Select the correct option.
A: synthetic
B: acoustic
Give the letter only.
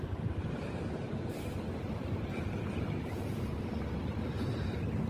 A